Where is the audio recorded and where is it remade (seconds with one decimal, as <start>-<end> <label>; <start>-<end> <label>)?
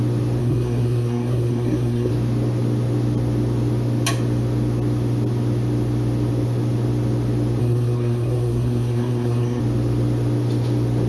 0.0-0.4 recorded; 0.4-2.1 remade; 2.1-7.6 recorded; 7.6-9.6 remade; 9.6-11.1 recorded